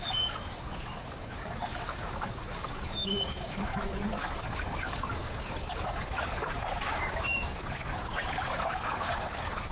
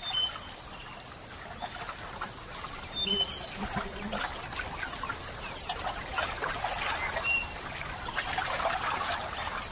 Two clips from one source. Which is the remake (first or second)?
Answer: first